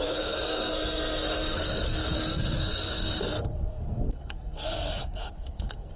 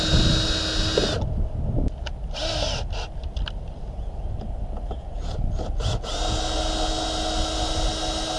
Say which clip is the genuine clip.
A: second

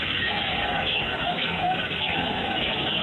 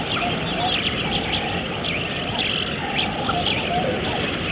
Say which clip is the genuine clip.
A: second